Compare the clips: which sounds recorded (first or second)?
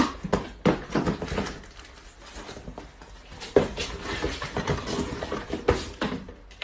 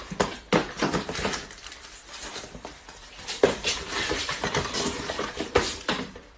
first